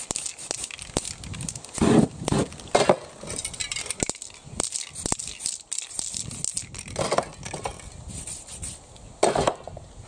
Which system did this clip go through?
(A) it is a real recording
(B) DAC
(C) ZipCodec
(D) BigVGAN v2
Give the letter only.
A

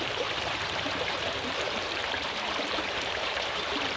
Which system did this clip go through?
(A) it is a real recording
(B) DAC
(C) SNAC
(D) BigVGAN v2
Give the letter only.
D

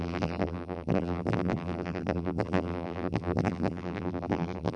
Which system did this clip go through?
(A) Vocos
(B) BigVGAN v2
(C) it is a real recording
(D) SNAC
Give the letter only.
B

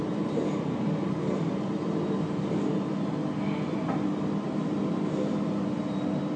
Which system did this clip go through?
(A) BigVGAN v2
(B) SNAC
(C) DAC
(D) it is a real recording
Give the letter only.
A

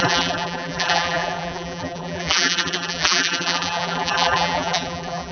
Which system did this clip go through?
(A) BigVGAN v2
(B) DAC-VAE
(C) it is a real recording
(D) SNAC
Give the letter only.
A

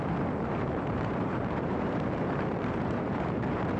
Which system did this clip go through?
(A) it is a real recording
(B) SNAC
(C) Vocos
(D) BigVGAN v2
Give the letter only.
D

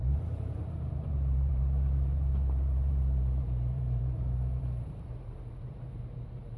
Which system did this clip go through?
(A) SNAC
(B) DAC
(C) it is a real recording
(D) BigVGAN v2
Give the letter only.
D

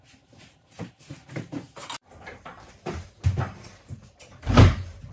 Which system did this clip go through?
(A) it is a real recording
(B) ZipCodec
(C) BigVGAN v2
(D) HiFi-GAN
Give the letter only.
C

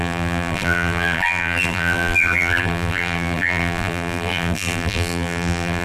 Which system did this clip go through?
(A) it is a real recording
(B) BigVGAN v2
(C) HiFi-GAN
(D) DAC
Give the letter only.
B